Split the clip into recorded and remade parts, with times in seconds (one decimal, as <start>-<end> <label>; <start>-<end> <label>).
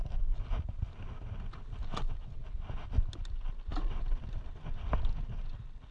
0.0-3.7 recorded; 3.7-4.5 remade; 4.5-5.9 recorded